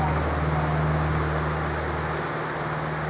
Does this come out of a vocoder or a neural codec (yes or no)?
no